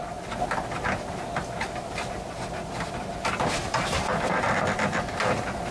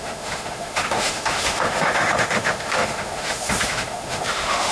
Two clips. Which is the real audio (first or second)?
first